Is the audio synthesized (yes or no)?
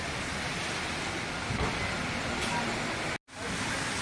no